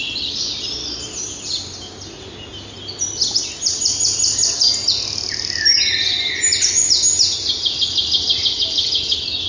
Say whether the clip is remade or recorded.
recorded